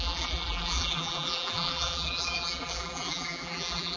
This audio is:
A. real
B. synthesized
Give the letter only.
B